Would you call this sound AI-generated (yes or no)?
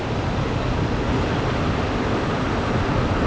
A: no